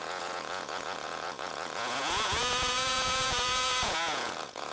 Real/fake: fake